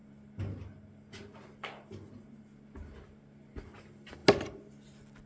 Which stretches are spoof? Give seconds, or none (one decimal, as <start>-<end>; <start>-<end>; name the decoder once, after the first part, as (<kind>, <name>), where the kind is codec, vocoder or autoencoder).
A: none

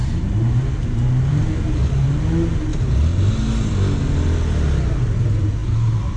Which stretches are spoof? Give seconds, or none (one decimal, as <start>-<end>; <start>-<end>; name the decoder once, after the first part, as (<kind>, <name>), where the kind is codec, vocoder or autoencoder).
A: 0.0-2.2 (vocoder, BigVGAN v2); 2.7-3.3

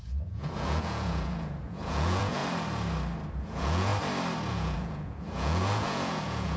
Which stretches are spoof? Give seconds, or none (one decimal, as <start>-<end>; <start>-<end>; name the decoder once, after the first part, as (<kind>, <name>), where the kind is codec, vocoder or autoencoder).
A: 0.0-2.4 (vocoder, Vocos); 3.3-3.9; 4.5-6.6

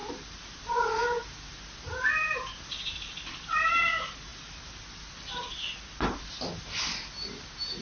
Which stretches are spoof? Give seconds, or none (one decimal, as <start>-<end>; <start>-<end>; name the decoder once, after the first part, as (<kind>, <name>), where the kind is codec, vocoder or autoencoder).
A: 0.0-2.1 (vocoder, BigVGAN v2); 4.3-4.8; 5.5-6.3

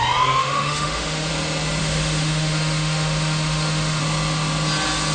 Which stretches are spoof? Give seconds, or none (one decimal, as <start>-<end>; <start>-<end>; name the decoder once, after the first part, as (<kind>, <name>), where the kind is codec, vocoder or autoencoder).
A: 0.4-1.3 (autoencoder, DAC-VAE); 1.8-4.0

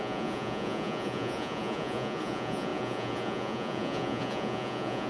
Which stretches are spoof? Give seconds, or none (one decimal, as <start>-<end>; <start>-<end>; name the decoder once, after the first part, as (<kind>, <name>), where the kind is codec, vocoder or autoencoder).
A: 0.0-5.1 (vocoder, Vocos)